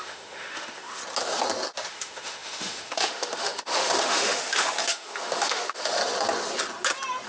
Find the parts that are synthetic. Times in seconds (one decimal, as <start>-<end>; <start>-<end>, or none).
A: 0.0-1.0; 1.9-6.0